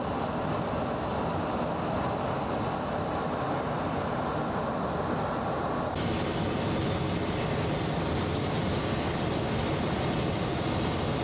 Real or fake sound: real